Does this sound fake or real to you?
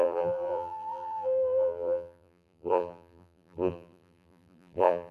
fake